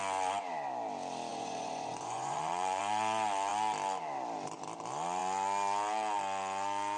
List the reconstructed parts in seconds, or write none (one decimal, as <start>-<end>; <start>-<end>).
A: 1.3-2.8